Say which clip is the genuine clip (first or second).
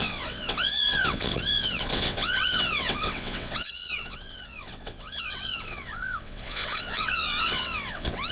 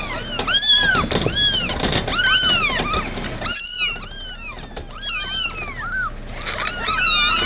second